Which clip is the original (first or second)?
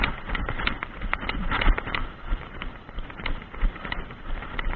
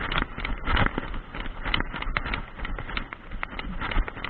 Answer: second